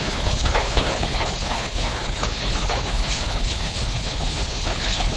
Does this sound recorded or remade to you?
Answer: remade